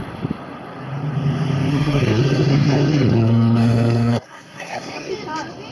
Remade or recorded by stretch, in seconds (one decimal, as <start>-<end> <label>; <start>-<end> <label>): 0.0-1.7 recorded; 1.7-5.1 remade; 5.1-5.7 recorded